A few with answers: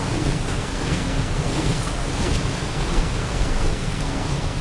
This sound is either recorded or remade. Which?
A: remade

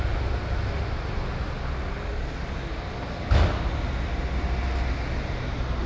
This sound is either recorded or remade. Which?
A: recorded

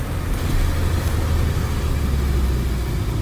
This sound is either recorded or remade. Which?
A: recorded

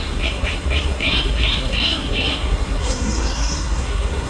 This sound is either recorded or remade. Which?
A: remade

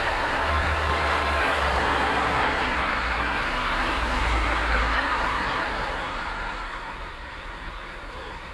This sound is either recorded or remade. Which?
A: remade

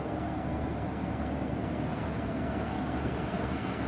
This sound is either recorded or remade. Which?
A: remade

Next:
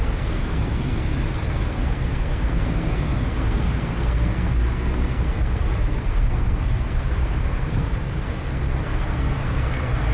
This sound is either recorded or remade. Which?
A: remade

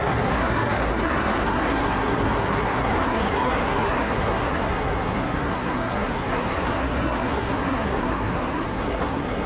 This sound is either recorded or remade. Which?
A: remade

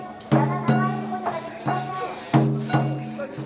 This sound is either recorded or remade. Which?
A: recorded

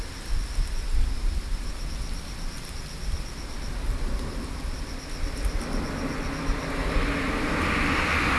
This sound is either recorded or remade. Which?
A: recorded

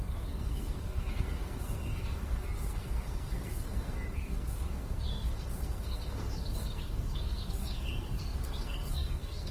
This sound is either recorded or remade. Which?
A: remade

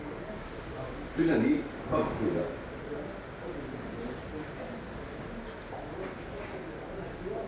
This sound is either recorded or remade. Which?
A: recorded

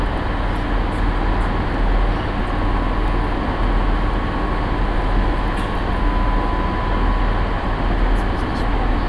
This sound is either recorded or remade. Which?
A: recorded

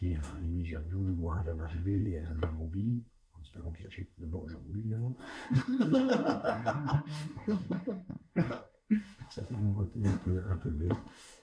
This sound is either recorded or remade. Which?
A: remade